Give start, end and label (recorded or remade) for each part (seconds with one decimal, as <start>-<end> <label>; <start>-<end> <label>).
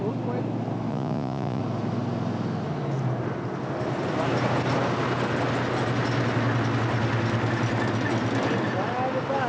0.0-0.9 recorded; 0.9-1.6 remade; 1.6-9.5 recorded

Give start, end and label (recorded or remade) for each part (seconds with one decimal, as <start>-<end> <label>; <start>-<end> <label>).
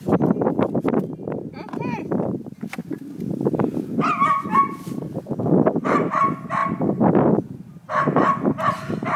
0.0-9.2 recorded